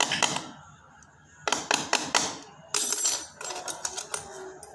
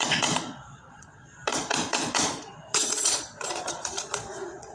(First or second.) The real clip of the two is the first